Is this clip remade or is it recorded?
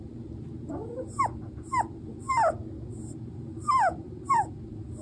recorded